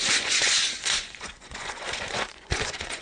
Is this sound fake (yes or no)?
yes